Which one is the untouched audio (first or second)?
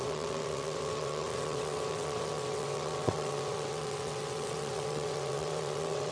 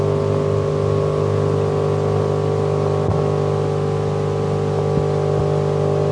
second